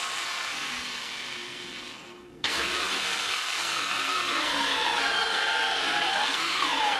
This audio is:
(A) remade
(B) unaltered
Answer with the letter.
A